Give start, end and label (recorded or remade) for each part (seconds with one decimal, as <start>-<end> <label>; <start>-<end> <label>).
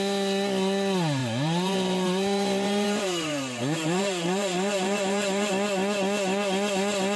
0.0-1.2 recorded; 1.2-5.5 remade; 5.5-7.2 recorded